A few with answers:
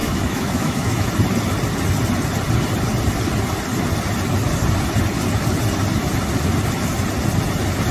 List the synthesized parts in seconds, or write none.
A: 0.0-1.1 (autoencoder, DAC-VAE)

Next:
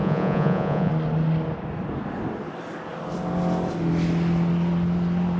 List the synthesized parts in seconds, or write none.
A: 0.0-0.9 (vocoder, Vocos)

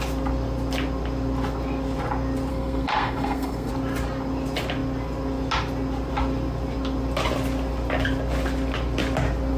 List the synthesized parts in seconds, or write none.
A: 2.5-3.7 (codec, SNAC)

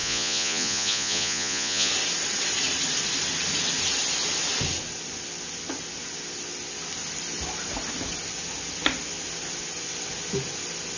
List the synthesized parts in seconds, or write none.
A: 0.0-1.9 (vocoder, Vocos)

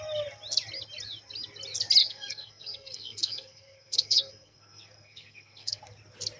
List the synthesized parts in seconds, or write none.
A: 2.0-5.8 (codec, SNAC)

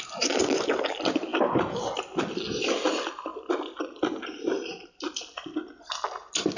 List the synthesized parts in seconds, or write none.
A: none

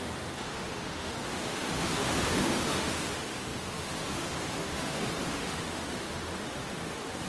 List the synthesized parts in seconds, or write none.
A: 0.0-7.3 (autoencoder, DAC-VAE)

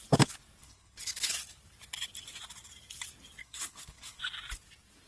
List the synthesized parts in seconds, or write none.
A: 0.6-1.3 (codec, HILCodec); 3.4-4.2